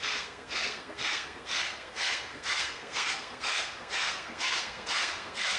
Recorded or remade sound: remade